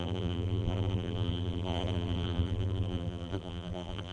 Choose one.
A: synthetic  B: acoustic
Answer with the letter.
A